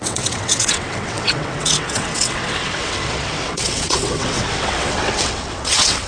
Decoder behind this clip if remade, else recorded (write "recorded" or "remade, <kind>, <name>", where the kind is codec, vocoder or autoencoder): remade, vocoder, WaveNeXt